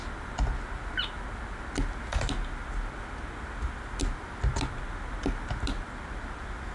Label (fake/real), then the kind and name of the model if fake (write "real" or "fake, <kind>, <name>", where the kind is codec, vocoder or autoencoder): real